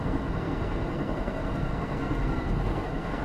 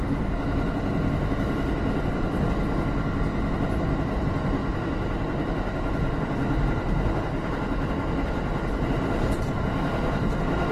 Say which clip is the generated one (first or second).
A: first